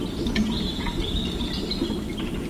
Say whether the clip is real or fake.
real